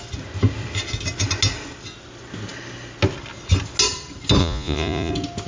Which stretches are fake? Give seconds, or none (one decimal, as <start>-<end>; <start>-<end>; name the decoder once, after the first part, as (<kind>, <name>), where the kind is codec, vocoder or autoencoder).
4.4-5.1 (vocoder, Vocos)